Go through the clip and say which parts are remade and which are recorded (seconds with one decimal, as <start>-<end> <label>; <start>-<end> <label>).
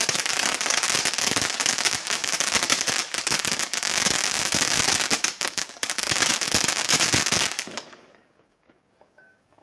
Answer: 0.0-9.6 remade